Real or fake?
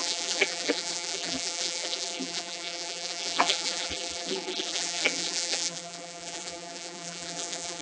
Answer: fake